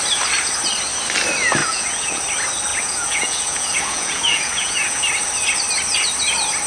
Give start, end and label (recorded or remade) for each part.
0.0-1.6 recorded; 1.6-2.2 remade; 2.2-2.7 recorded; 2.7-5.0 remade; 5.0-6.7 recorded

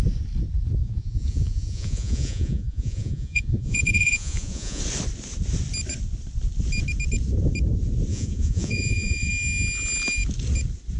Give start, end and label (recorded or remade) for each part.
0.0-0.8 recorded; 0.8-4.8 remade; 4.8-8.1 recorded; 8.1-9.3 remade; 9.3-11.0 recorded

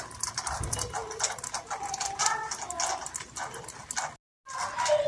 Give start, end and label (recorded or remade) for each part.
0.0-5.1 recorded